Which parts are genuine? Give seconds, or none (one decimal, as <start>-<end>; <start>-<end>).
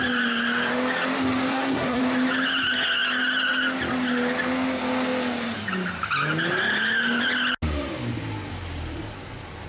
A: 0.0-1.5; 2.0-9.7